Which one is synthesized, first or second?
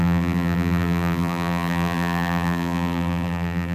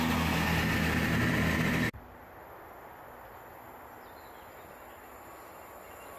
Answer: first